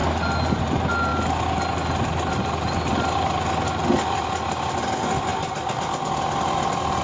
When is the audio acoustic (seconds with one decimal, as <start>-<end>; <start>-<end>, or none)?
0.0-7.0